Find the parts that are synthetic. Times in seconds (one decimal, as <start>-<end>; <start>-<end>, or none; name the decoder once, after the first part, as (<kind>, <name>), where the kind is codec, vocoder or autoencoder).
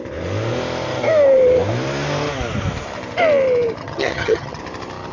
3.8-4.6 (vocoder, HiFi-GAN)